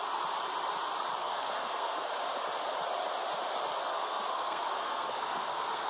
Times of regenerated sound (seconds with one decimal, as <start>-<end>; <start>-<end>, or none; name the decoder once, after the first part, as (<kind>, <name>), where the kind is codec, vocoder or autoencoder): 1.2-2.1 (codec, SNAC); 3.9-5.9